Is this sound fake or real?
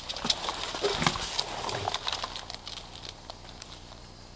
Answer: real